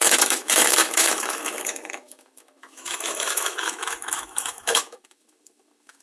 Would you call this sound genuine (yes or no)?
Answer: no